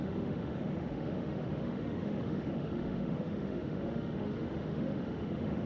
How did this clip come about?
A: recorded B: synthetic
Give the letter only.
B